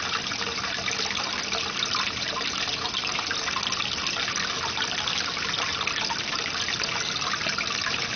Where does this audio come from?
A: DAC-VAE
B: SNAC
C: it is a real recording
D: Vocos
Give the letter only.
C